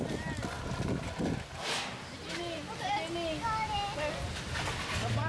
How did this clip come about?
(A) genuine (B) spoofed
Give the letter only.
A